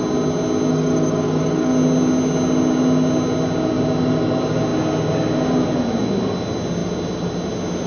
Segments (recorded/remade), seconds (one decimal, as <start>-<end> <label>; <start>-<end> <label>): 0.0-0.7 recorded; 0.7-1.7 remade; 1.7-7.9 recorded